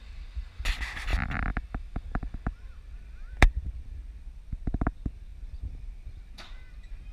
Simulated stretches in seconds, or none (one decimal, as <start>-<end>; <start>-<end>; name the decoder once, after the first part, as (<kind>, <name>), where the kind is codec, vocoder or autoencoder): none